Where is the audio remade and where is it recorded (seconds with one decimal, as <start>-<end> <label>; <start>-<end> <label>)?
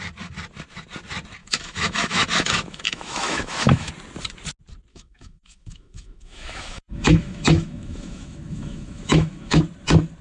0.0-1.4 recorded; 1.4-3.9 remade; 3.9-4.9 recorded; 4.9-9.6 remade; 9.6-10.2 recorded